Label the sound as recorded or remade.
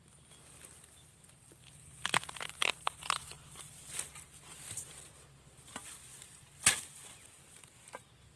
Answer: recorded